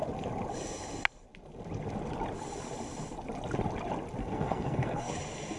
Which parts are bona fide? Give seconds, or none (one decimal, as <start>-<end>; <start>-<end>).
0.0-4.2; 5.1-5.6